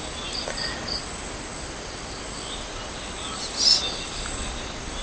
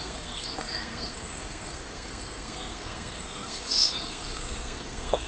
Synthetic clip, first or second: second